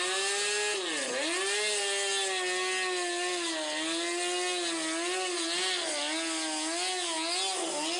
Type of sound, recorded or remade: recorded